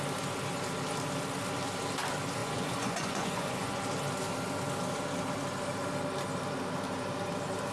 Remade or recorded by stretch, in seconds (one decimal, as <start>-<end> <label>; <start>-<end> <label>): 0.0-2.4 recorded; 2.4-3.8 remade; 3.8-7.7 recorded